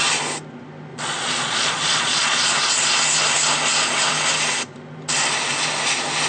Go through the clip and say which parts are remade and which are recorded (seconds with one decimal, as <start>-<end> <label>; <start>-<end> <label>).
0.0-0.9 recorded; 0.9-2.5 remade; 2.5-6.3 recorded